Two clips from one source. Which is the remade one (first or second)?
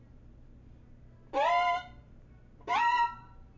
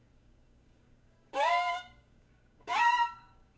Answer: second